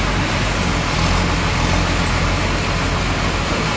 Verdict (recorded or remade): recorded